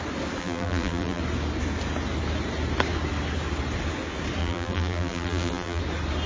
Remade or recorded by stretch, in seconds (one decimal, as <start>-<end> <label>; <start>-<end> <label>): 0.0-0.4 recorded; 0.4-1.2 remade; 1.2-4.4 recorded; 4.4-5.8 remade; 5.8-6.3 recorded